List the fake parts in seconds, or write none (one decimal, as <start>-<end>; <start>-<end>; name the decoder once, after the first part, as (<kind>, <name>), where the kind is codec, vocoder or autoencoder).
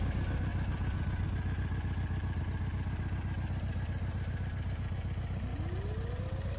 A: none